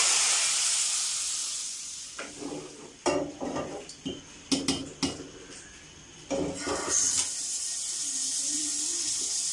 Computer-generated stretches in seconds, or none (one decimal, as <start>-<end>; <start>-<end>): 1.4-2.3